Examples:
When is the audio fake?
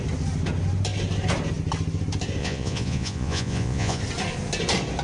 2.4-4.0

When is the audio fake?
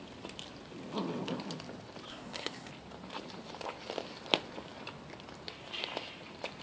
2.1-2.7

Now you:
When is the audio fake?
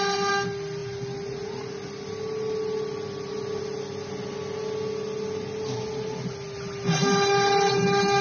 none